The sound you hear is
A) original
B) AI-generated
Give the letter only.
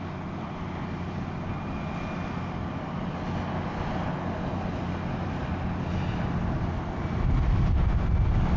A